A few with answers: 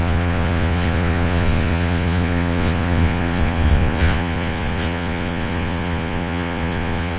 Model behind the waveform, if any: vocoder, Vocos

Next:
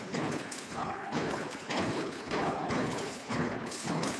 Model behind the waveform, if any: codec, HILCodec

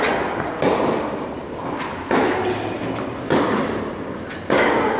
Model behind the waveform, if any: none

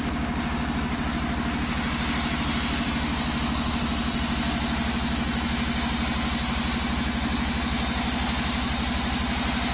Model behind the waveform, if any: none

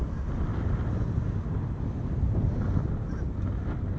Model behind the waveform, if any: none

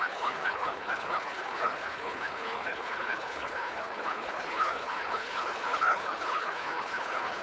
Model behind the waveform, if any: codec, HILCodec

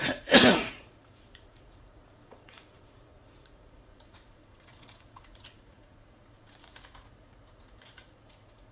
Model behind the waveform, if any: vocoder, Vocos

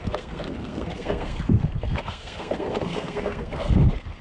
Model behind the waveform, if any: codec, SNAC